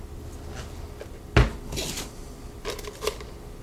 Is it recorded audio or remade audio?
recorded